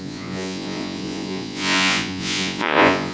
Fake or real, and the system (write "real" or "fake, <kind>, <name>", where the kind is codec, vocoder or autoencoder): fake, vocoder, Vocos